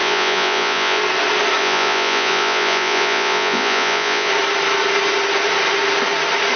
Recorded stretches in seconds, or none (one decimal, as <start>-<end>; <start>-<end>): 1.0-1.6; 4.3-6.6